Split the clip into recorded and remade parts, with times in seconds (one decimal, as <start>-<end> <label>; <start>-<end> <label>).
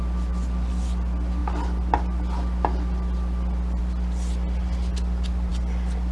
0.0-6.1 recorded